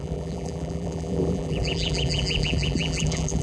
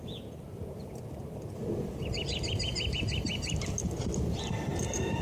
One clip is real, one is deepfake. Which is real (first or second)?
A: second